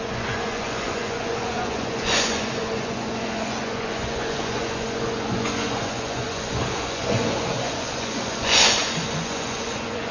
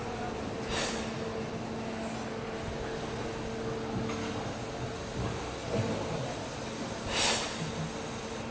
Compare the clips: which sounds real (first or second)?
second